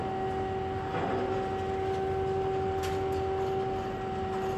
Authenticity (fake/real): real